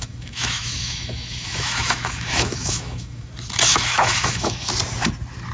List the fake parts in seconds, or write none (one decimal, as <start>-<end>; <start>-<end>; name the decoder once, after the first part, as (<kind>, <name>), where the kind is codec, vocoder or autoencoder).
0.0-3.3 (autoencoder, DAC-VAE); 3.7-4.7